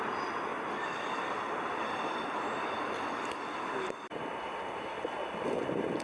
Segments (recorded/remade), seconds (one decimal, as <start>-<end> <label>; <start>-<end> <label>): 0.0-0.5 recorded; 0.5-4.1 remade; 4.1-6.0 recorded